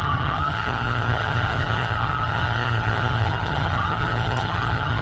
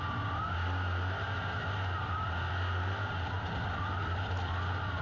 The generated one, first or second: first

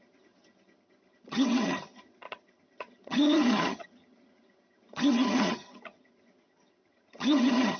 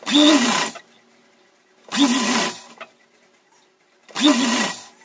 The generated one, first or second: first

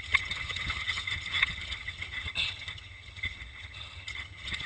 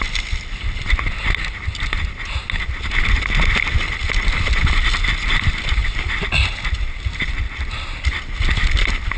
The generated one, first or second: first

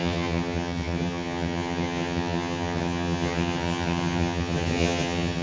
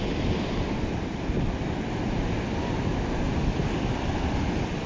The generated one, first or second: first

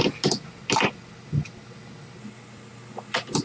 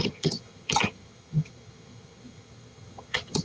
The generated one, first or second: second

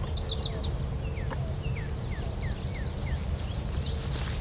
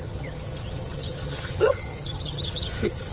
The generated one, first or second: second